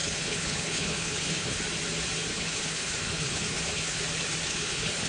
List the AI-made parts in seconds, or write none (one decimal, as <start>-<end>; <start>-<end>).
0.0-1.6; 2.3-4.0; 4.5-5.1